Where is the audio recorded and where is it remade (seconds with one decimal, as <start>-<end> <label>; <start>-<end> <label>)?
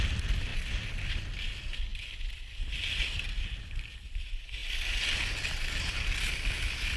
0.0-7.0 recorded